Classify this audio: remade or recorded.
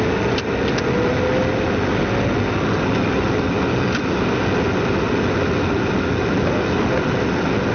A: recorded